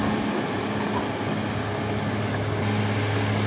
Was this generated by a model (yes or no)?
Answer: no